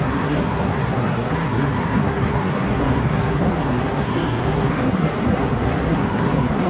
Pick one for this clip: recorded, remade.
remade